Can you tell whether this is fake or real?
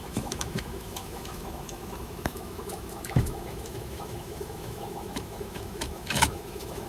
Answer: fake